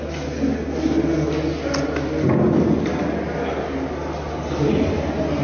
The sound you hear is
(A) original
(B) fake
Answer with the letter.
A